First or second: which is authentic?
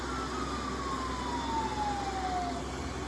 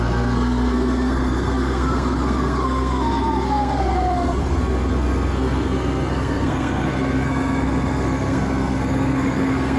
first